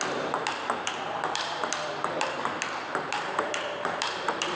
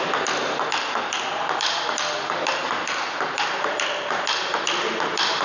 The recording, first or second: second